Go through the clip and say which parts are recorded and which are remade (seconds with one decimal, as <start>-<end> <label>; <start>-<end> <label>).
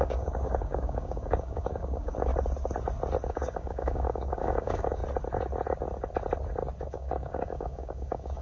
0.0-2.3 remade; 2.3-3.3 recorded; 3.3-5.0 remade; 5.0-6.9 recorded; 6.9-8.4 remade